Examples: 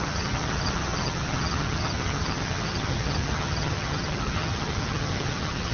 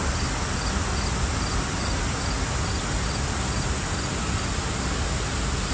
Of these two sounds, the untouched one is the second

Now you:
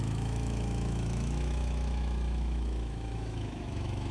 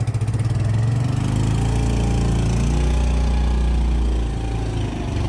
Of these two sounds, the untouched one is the second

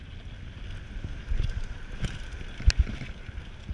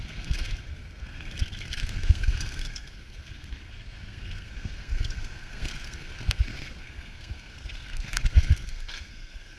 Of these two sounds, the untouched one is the first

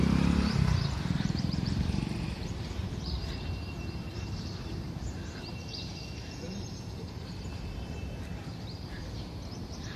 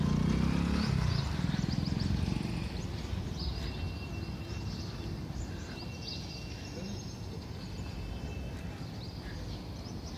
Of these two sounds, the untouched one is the second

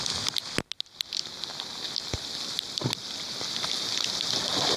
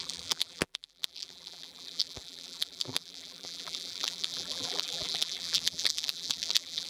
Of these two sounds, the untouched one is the first